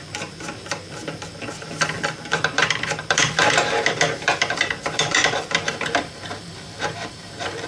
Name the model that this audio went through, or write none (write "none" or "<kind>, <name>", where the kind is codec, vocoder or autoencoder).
vocoder, BigVGAN v2